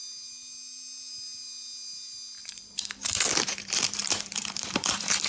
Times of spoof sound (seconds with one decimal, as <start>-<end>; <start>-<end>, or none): 2.4-5.3